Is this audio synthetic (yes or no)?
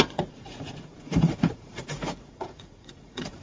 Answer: yes